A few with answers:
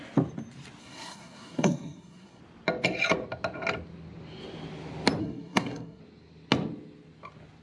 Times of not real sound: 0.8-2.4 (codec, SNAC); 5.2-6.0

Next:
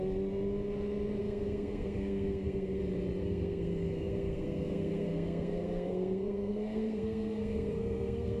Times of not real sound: 1.2-2.8 (codec, SNAC); 3.2-8.4

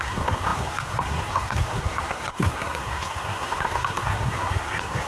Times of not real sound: 0.0-5.1 (codec, SNAC)

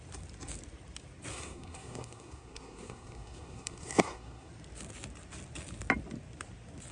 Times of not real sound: 1.3-4.5 (codec, SNAC)

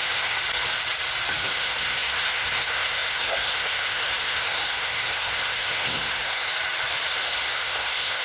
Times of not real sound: 0.0-0.4 (codec, SNAC); 1.4-6.5; 7.1-8.2

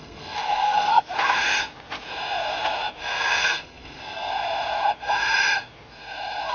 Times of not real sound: 0.0-0.9 (codec, SNAC); 3.0-4.3

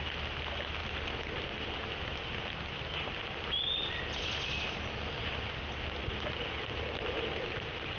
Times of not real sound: none